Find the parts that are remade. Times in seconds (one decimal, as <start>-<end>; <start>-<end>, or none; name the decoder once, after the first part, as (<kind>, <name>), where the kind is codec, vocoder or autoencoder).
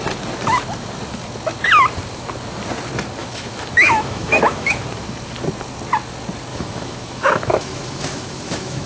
3.2-4.8 (autoencoder, DAC-VAE); 6.5-8.9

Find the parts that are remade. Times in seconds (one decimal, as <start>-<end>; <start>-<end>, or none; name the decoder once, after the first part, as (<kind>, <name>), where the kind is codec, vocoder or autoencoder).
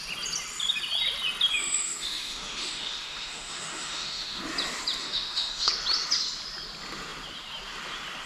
1.5-4.4 (autoencoder, DAC-VAE); 5.0-5.7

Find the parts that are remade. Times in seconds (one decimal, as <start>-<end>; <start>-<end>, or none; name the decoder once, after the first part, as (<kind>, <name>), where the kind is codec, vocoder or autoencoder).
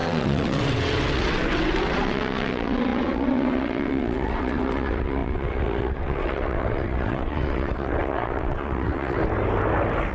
0.0-9.2 (vocoder, WaveNeXt)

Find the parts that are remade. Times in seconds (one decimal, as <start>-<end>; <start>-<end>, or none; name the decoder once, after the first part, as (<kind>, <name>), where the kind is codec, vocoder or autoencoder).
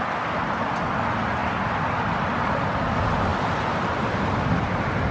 none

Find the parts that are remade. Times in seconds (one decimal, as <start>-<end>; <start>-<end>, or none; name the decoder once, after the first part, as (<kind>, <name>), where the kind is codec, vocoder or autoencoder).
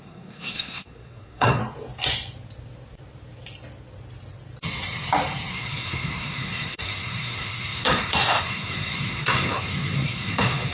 0.0-1.6 (codec, SNAC); 5.5-10.7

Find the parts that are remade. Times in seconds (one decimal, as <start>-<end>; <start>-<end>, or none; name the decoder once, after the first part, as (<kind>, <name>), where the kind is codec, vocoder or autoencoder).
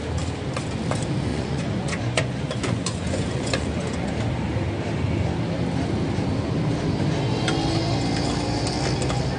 1.3-4.1 (vocoder, Vocos)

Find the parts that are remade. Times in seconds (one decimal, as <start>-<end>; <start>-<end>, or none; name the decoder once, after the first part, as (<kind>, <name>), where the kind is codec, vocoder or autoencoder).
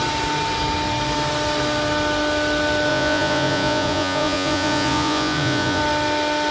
2.9-5.8 (vocoder, Vocos)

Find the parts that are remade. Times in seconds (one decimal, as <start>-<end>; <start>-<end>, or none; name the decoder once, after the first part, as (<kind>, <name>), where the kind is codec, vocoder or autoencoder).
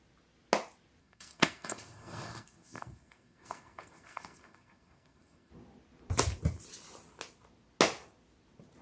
1.0-5.5 (codec, SNAC)